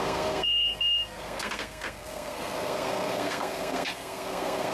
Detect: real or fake fake